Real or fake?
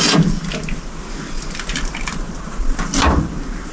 real